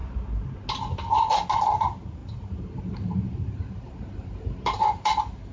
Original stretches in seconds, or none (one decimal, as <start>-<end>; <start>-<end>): 0.0-1.6